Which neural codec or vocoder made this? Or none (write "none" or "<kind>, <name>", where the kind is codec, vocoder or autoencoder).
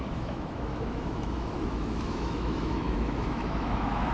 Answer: autoencoder, DAC-VAE